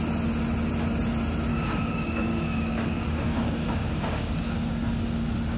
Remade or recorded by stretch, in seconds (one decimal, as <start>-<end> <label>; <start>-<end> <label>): 0.0-1.5 recorded; 1.5-4.7 remade; 4.7-5.6 recorded